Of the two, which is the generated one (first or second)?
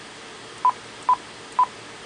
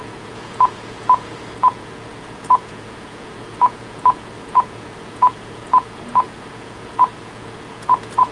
second